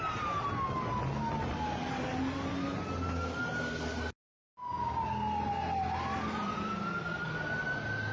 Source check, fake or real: real